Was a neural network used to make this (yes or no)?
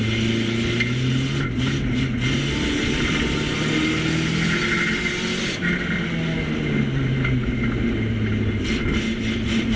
no